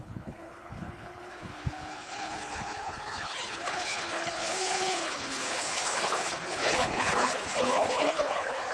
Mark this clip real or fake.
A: fake